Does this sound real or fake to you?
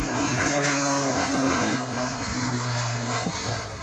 fake